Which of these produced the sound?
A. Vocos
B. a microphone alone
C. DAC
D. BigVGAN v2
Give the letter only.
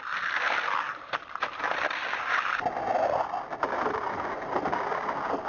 B